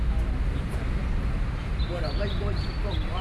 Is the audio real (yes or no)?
yes